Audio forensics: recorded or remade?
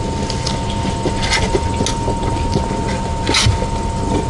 recorded